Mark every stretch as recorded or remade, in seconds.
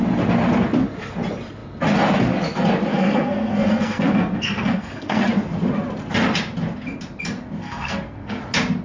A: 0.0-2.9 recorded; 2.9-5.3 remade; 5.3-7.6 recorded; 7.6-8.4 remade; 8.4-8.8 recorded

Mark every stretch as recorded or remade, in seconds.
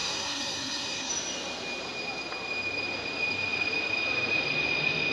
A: 0.0-1.1 remade; 1.1-5.1 recorded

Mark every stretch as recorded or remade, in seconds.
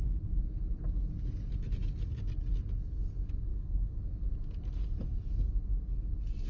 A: 0.0-3.5 recorded; 3.5-4.3 remade; 4.3-6.5 recorded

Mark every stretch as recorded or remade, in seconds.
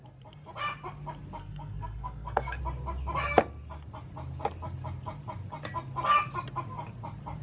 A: 0.0-1.4 recorded; 1.4-2.6 remade; 2.6-7.4 recorded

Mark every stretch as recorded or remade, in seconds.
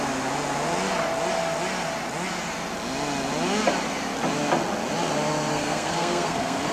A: 0.0-5.5 recorded; 5.5-6.7 remade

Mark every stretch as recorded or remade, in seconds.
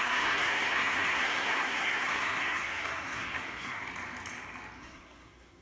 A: 0.0-3.8 remade; 3.8-4.8 recorded; 4.8-5.6 remade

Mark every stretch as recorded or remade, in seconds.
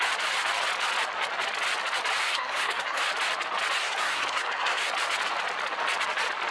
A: 0.0-2.2 recorded; 2.2-3.0 remade; 3.0-3.8 recorded; 3.8-4.9 remade; 4.9-6.5 recorded